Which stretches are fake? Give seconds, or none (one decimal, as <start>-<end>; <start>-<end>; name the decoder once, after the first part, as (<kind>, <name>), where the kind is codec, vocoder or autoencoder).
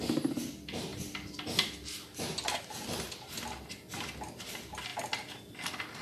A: none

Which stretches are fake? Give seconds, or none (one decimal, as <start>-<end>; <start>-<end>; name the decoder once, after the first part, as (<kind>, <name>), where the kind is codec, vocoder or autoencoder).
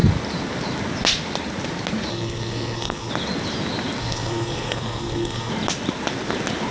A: 2.1-3.1 (codec, SNAC); 4.0-5.5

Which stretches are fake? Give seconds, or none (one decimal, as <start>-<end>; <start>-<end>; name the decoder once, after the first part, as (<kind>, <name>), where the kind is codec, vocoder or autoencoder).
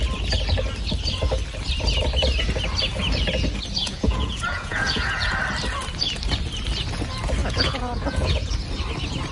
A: 3.8-5.3 (vocoder, Vocos); 7.4-8.5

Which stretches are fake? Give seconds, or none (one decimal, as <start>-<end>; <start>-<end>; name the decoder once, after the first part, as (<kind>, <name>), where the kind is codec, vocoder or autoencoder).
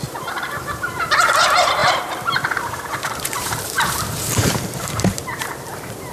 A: 0.0-6.1 (vocoder, BigVGAN v2)